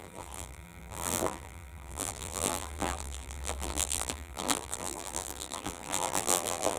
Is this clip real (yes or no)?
no